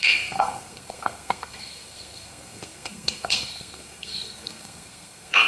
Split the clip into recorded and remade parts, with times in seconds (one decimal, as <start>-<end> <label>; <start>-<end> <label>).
0.0-5.5 remade